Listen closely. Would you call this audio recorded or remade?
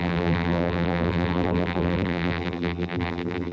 remade